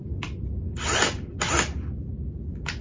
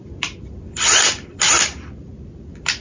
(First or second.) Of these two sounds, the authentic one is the first